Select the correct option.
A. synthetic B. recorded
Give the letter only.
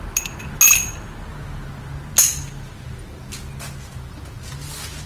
B